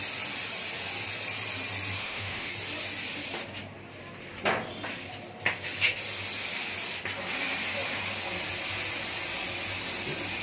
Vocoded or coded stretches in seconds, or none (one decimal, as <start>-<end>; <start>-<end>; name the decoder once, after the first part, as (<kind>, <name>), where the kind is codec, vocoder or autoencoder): 2.0-2.5 (autoencoder, DAC-VAE)